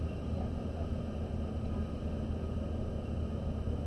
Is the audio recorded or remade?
recorded